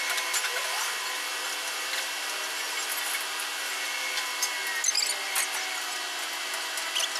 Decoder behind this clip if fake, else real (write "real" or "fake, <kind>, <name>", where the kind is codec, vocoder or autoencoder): real